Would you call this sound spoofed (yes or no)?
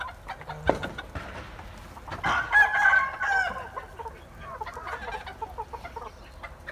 no